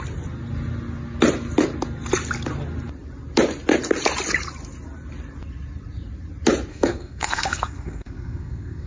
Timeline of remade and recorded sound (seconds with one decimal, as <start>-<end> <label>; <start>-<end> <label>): 0.0-6.7 recorded; 6.7-8.9 remade